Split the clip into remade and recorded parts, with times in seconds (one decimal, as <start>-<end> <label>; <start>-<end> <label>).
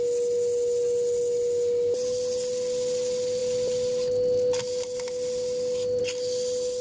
0.0-6.8 recorded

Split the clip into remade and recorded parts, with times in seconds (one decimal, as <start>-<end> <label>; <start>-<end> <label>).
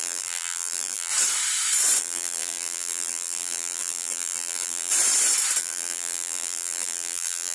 0.0-1.1 remade; 1.1-2.0 recorded; 2.0-4.9 remade; 4.9-5.6 recorded; 5.6-7.5 remade